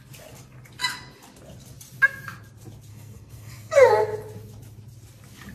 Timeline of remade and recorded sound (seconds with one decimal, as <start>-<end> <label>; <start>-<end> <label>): 0.0-2.9 recorded; 2.9-3.9 remade; 3.9-5.5 recorded

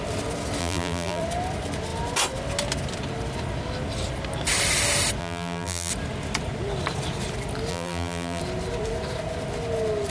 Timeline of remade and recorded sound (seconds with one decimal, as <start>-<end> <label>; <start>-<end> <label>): 0.0-0.6 recorded; 0.6-1.2 remade; 1.2-5.2 recorded; 5.2-5.9 remade; 5.9-7.7 recorded; 7.7-8.4 remade; 8.4-10.1 recorded

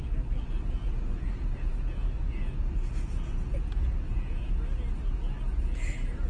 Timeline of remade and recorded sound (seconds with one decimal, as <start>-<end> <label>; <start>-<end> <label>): 0.0-0.8 recorded; 0.8-4.4 remade; 4.4-6.3 recorded

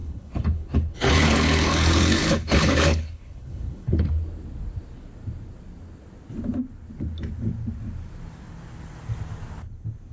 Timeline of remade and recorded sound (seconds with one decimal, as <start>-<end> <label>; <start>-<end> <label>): 0.0-4.1 remade; 4.1-10.1 recorded

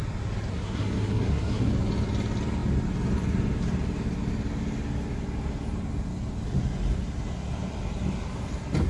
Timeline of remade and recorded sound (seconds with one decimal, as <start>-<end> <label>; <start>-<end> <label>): 0.0-0.5 recorded; 0.5-1.7 remade; 1.7-8.9 recorded

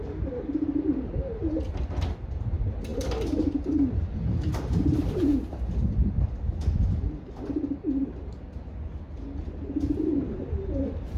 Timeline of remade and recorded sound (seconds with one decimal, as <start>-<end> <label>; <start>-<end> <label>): 0.0-2.9 recorded; 2.9-5.2 remade; 5.2-11.2 recorded

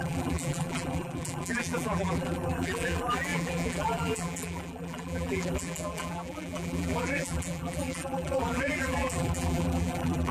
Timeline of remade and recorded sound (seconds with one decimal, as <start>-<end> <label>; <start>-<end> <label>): 0.0-10.3 remade